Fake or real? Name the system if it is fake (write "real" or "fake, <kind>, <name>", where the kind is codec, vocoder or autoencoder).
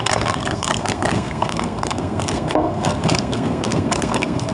fake, codec, SNAC